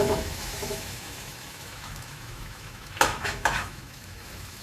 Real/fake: fake